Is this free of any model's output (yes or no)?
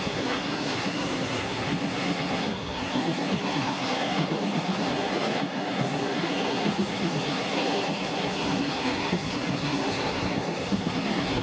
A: no